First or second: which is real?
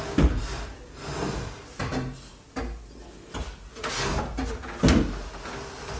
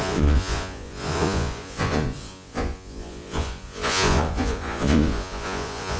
first